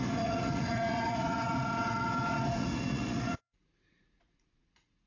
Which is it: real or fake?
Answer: fake